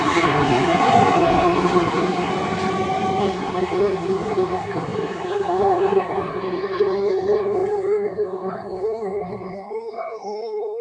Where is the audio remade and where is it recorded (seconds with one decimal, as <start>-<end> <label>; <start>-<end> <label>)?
0.0-2.3 remade; 2.3-3.2 recorded; 3.2-10.8 remade